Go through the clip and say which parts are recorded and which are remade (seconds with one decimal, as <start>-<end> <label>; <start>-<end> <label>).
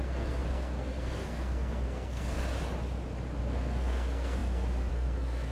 0.0-2.4 remade; 2.4-3.4 recorded; 3.4-5.5 remade